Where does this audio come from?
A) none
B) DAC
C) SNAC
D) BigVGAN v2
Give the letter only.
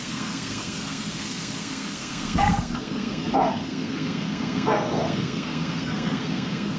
C